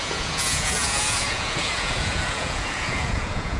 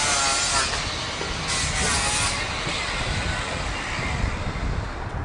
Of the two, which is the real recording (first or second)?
second